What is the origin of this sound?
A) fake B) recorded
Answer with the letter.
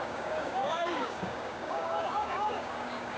A